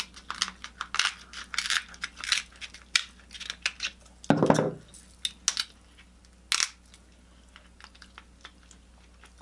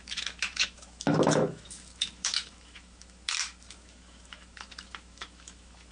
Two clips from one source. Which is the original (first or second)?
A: first